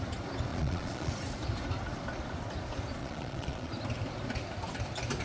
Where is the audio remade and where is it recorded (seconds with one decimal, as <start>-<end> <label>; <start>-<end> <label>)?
0.0-0.5 recorded; 0.5-1.1 remade; 1.1-3.0 recorded; 3.0-3.7 remade; 3.7-5.2 recorded